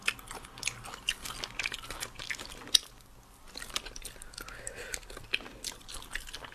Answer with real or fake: real